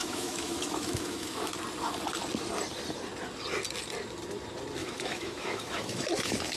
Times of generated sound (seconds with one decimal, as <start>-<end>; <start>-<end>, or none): 0.0-1.5; 4.8-6.6